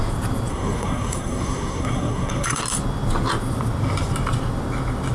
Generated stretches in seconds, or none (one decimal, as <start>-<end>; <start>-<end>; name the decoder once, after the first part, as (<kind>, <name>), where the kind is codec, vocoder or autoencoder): 0.5-2.6 (codec, SNAC)